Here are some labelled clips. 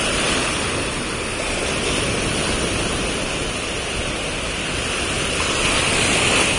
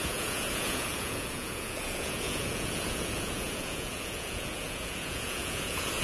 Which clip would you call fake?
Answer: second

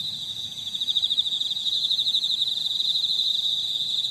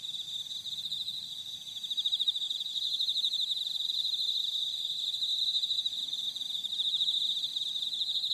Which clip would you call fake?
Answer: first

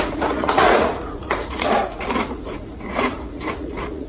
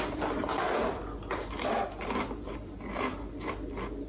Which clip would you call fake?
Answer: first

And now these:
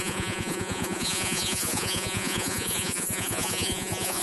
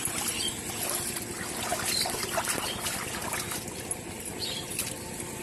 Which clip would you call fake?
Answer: first